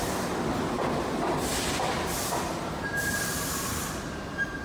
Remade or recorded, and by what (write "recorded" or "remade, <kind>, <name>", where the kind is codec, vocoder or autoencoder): remade, vocoder, BigVGAN v2